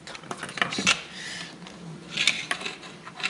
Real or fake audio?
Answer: real